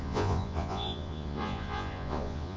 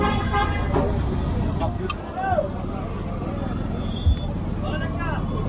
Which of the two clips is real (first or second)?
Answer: second